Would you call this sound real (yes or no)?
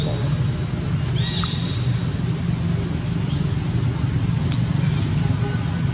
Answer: yes